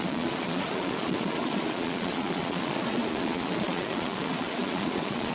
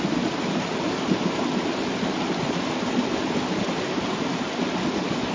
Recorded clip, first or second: second